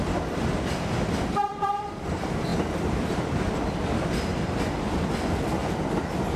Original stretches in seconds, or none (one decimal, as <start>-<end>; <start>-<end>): 4.3-4.9; 5.6-6.4